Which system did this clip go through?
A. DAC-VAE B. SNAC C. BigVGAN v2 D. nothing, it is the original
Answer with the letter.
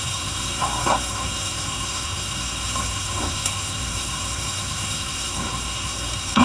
B